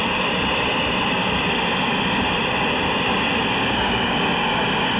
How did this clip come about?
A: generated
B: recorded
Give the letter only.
B